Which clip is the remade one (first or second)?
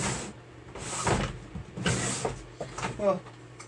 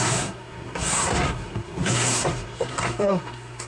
second